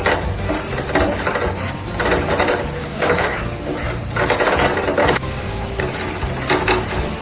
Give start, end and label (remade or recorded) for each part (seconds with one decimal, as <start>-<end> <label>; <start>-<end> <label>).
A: 0.0-2.8 recorded; 2.8-3.4 remade; 3.4-5.0 recorded; 5.0-5.8 remade; 5.8-7.2 recorded